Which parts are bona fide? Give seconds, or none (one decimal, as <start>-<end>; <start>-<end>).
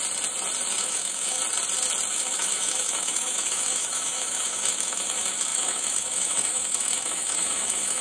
0.0-0.8; 1.4-2.1